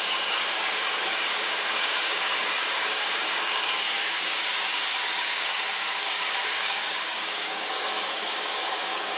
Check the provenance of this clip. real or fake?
fake